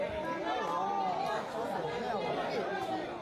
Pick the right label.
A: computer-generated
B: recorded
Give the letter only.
B